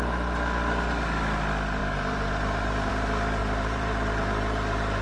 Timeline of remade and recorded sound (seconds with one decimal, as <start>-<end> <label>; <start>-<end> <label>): 0.0-1.8 recorded; 1.8-2.9 remade; 2.9-3.4 recorded; 3.4-5.0 remade